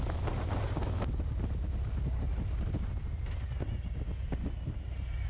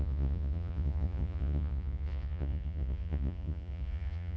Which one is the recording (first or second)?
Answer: first